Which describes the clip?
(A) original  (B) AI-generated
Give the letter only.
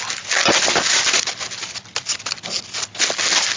A